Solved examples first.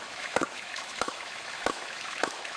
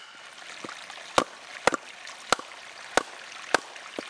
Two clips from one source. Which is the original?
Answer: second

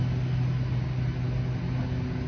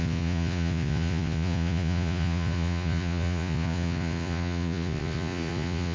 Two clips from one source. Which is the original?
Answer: first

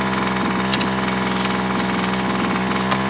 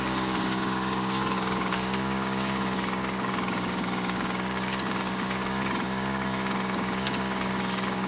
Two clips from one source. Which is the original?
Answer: first